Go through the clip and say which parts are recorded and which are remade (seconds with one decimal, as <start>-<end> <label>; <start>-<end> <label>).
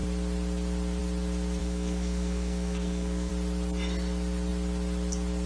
0.0-1.6 recorded; 1.6-3.3 remade; 3.3-5.5 recorded